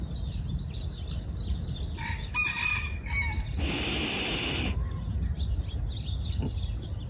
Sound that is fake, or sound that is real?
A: real